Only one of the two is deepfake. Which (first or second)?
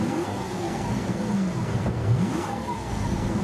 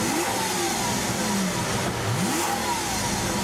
first